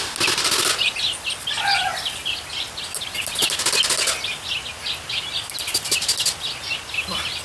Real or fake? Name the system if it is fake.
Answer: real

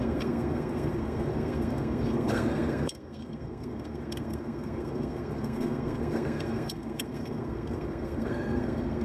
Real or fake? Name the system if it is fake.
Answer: fake, codec, SNAC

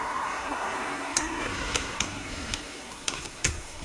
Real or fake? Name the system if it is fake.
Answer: fake, codec, SNAC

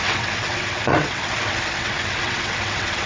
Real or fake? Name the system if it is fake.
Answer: fake, vocoder, WaveNeXt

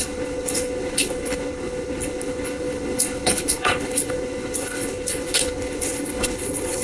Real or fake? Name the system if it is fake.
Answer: fake, codec, HILCodec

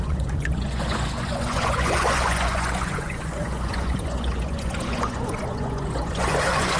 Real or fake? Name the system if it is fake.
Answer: fake, vocoder, Vocos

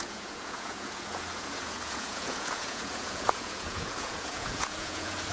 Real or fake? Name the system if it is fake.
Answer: fake, vocoder, Vocos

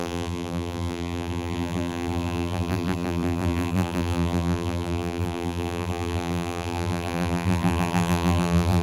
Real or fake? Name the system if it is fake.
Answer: fake, vocoder, BigVGAN v2